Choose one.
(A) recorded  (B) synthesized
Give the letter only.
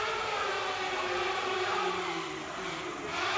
A